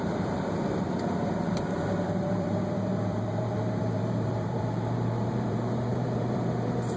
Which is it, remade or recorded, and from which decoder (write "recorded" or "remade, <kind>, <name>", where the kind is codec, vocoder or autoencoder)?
remade, vocoder, BigVGAN v2